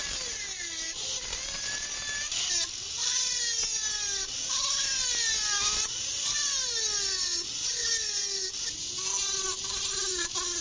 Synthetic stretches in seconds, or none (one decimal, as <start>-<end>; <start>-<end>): none